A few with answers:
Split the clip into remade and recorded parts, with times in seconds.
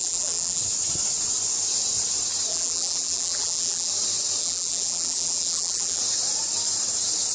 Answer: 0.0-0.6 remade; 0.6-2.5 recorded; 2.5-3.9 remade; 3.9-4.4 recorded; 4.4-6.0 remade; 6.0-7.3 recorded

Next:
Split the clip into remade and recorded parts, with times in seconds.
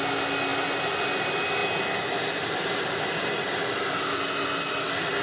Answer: 0.0-5.2 recorded